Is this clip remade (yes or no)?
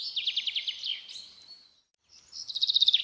no